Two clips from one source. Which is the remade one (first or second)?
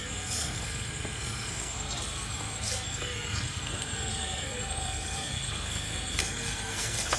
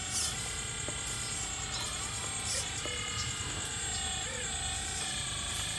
first